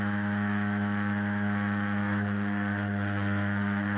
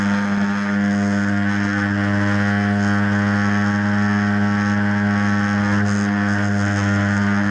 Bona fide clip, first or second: second